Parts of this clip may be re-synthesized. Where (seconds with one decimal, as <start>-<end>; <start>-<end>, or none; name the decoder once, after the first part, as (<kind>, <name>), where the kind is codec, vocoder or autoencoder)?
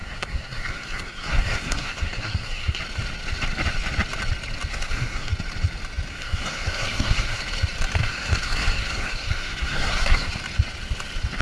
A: 0.0-2.8 (codec, SNAC); 4.7-5.3; 6.1-7.4; 8.0-10.3